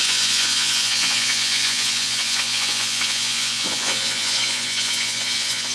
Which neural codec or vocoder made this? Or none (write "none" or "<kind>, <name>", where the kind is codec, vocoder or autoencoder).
vocoder, Vocos